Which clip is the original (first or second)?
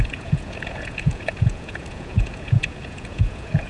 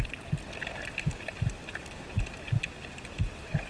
second